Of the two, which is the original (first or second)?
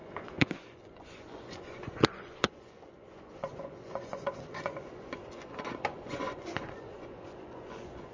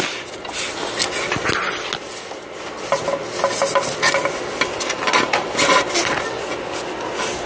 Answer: second